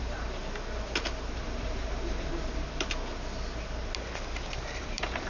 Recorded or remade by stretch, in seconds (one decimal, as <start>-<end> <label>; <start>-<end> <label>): 0.0-0.4 remade; 0.4-1.3 recorded; 1.3-2.3 remade; 2.3-4.6 recorded; 4.6-5.3 remade